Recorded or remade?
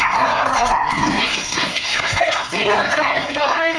remade